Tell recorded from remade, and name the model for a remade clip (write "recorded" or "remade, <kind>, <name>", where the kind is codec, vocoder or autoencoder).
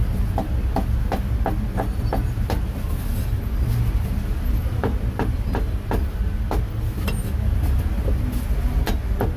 recorded